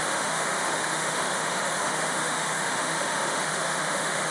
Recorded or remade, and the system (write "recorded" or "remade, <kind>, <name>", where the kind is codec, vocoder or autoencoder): remade, autoencoder, DAC-VAE